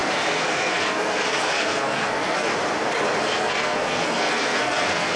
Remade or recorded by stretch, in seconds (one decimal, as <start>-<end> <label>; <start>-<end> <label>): 0.0-2.5 remade; 2.5-3.2 recorded; 3.2-5.2 remade